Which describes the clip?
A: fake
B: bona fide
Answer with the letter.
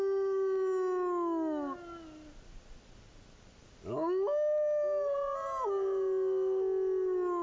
B